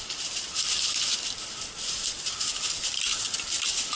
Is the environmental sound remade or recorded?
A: recorded